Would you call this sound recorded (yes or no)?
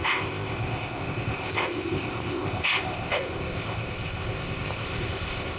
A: no